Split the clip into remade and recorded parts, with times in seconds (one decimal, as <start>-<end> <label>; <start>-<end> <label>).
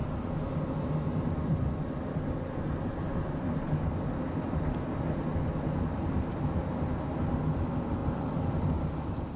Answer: 0.0-9.4 recorded